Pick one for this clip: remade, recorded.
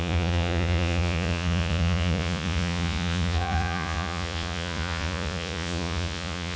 remade